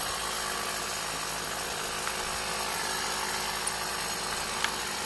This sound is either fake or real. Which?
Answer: real